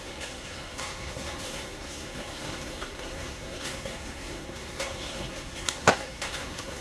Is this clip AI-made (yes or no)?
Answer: yes